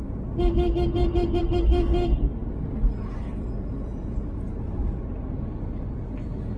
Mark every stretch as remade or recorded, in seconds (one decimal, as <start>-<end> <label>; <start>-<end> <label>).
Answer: 0.0-6.6 recorded